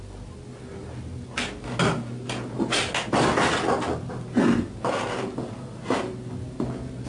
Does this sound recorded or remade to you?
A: recorded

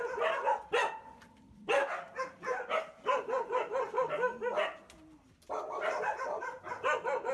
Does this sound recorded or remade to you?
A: recorded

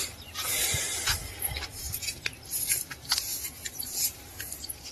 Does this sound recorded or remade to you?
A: remade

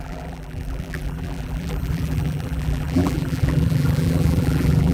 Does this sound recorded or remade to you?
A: remade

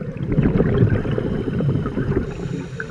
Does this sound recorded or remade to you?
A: remade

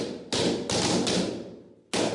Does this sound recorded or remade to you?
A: recorded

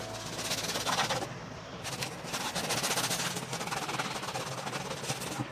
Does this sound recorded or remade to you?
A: recorded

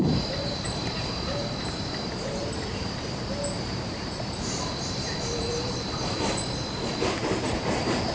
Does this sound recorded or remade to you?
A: remade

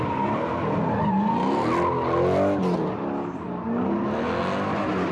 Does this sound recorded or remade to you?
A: recorded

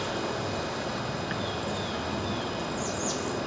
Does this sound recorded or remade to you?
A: recorded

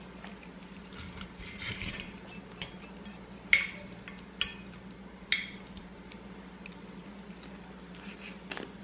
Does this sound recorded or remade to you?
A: recorded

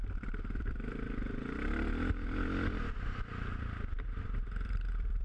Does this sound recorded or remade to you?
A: remade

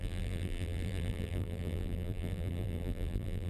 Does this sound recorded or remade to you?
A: remade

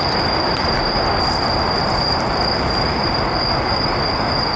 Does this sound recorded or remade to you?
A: remade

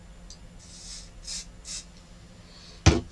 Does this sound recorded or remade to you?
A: recorded